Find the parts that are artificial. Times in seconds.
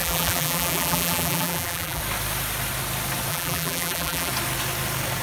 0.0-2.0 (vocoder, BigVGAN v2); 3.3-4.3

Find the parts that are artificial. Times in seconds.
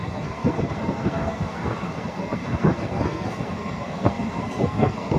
0.0-5.2 (codec, SNAC)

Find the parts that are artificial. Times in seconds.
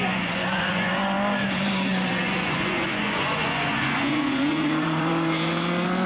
0.0-1.0 (vocoder, Vocos); 2.1-6.1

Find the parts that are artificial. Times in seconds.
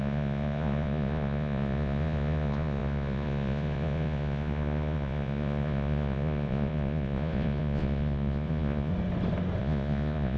0.0-8.9 (vocoder, Vocos); 9.6-10.4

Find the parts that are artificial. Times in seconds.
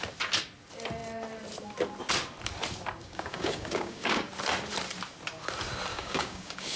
3.0-4.3 (codec, DAC); 5.9-6.8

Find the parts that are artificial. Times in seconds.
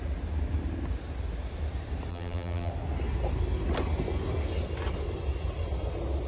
2.1-2.7 (vocoder, BigVGAN v2)